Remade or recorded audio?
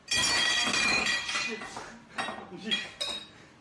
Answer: recorded